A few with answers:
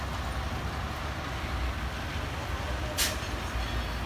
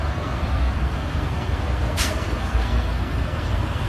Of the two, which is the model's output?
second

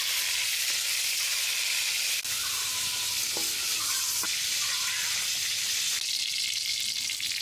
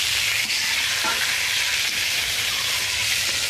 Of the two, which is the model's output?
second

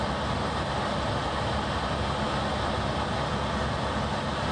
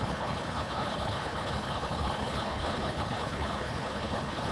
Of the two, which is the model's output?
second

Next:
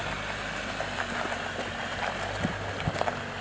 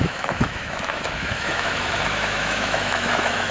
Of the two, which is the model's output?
second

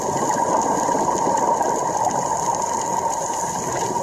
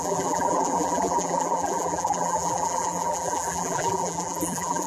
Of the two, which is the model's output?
second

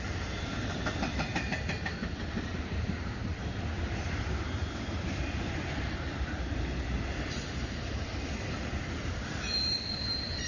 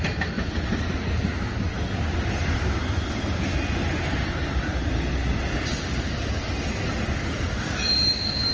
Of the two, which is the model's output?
first